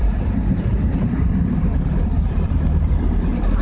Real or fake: fake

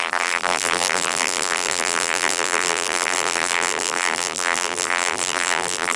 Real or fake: fake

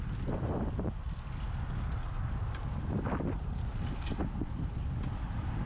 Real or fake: real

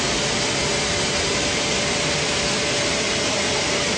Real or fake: real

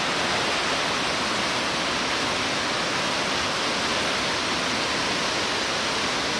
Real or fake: real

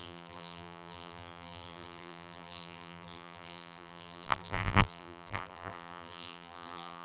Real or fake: fake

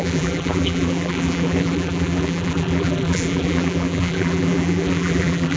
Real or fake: fake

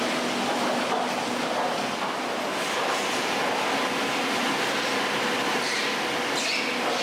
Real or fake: real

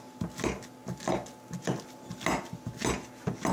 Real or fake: real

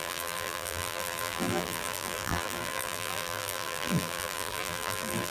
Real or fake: fake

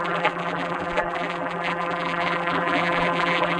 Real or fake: fake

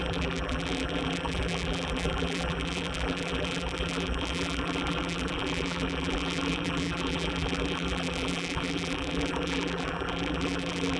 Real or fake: fake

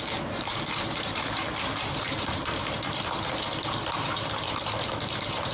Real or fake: fake